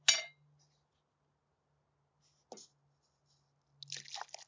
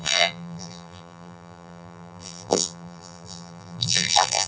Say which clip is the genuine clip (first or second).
first